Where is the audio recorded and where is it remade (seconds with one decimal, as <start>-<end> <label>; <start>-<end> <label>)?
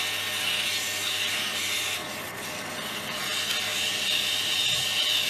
0.0-2.0 recorded; 2.0-3.2 remade; 3.2-3.7 recorded; 3.7-4.2 remade; 4.2-5.3 recorded